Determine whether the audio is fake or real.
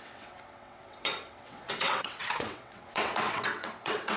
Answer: fake